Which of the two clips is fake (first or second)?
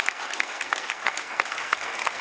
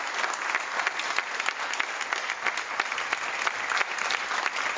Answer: first